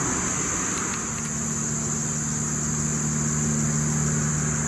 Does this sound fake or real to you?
real